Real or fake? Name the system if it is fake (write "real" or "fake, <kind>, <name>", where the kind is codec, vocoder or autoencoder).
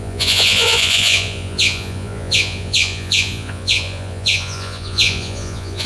fake, vocoder, Vocos